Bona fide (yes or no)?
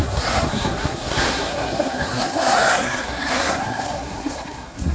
no